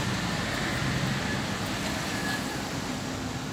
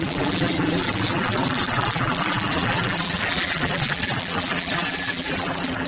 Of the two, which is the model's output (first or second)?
second